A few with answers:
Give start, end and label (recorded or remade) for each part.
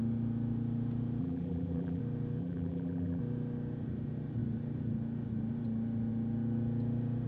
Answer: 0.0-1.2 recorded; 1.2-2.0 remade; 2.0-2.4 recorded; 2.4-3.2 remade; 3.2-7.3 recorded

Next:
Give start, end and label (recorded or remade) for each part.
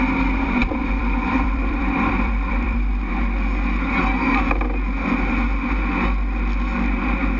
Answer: 0.0-0.6 recorded; 0.6-3.1 remade; 3.1-7.4 recorded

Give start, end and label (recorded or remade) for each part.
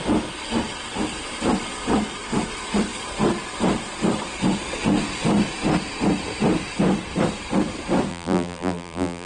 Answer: 0.0-8.1 recorded; 8.1-9.3 remade